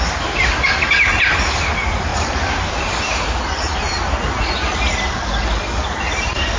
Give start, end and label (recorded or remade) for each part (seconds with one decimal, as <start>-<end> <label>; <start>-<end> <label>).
0.0-6.6 recorded